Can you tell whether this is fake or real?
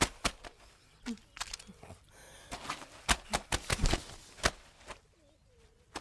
real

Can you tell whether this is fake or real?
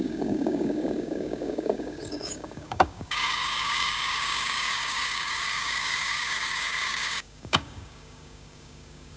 fake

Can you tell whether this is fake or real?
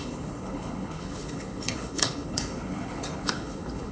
fake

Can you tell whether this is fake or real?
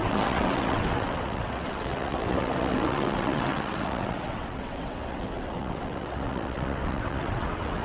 fake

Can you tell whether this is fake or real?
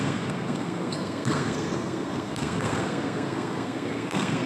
fake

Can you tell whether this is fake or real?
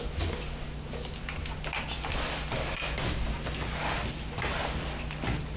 real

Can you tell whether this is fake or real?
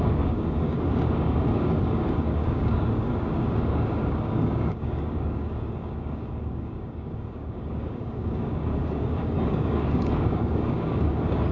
fake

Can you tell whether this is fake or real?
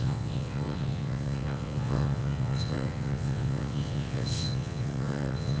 fake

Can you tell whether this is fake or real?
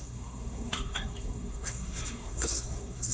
fake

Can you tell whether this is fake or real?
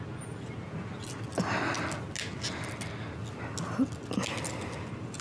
real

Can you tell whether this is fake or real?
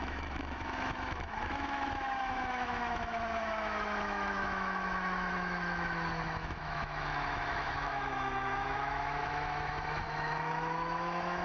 fake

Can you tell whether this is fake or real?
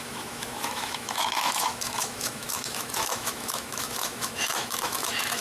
fake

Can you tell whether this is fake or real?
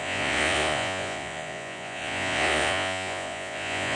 fake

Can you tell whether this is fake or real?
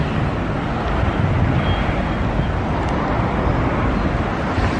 real